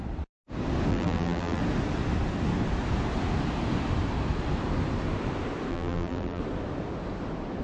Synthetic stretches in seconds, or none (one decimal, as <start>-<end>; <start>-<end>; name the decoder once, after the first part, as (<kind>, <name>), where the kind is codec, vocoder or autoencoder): 0.9-1.6 (vocoder, BigVGAN v2); 5.7-6.4